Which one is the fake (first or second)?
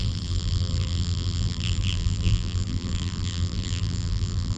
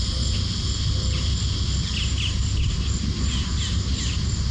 first